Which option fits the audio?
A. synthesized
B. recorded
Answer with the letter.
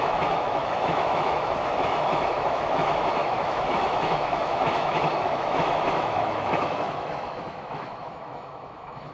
A